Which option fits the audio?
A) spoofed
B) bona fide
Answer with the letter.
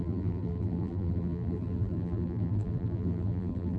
A